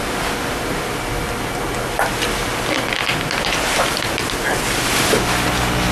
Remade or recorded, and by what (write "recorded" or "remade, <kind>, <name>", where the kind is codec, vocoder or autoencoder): recorded